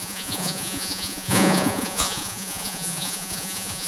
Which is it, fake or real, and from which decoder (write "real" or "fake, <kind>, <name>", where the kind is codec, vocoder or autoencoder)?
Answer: fake, vocoder, Vocos